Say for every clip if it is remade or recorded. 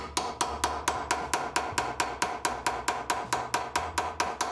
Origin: recorded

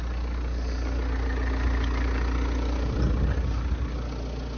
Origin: recorded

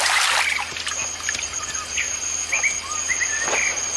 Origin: recorded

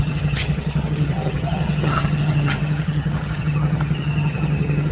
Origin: remade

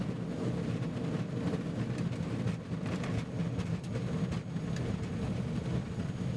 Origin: recorded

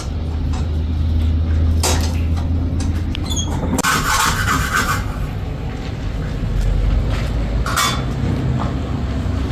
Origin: recorded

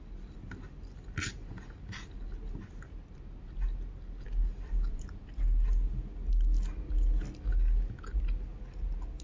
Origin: recorded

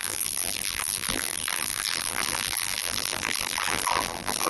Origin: remade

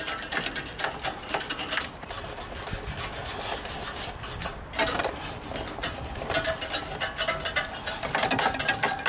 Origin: recorded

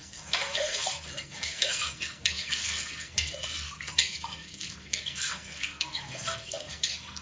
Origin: remade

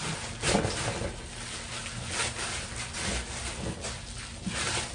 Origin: recorded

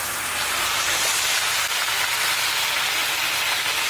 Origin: recorded